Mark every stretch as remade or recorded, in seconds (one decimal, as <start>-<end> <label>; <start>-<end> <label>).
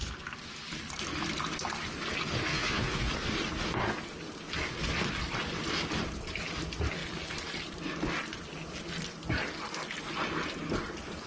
0.0-2.5 recorded; 2.5-3.1 remade; 3.1-11.3 recorded